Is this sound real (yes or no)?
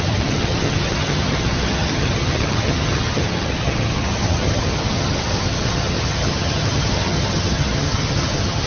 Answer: no